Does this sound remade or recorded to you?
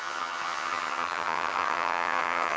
remade